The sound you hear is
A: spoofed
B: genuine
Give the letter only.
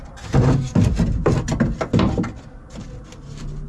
B